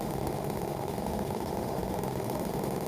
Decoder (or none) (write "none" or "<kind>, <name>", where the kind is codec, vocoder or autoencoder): autoencoder, DAC-VAE